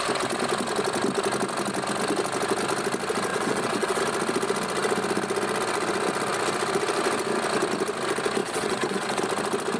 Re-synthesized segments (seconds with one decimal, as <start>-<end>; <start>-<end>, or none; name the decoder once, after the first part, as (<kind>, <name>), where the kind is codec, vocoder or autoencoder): 3.3-4.0 (vocoder, WaveNeXt); 8.4-9.2